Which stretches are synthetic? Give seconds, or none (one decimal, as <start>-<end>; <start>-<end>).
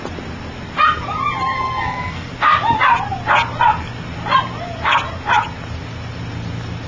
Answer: 1.5-2.3